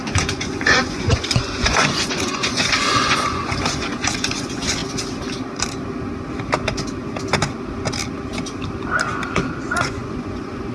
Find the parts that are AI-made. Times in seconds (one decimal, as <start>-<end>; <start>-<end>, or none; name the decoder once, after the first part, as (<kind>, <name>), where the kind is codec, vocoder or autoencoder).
0.0-4.8 (vocoder, Vocos); 9.6-10.7